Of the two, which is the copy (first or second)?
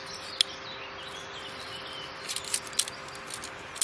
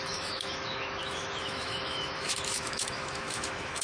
second